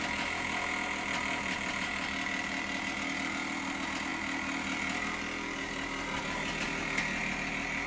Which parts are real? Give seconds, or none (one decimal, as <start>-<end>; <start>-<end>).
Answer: 0.0-7.9